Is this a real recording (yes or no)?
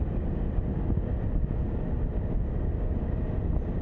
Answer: yes